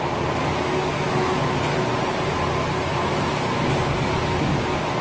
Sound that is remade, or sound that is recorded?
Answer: recorded